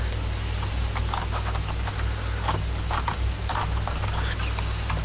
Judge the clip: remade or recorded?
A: recorded